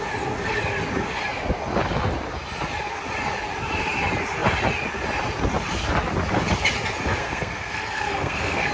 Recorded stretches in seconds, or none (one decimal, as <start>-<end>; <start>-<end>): 0.0-7.2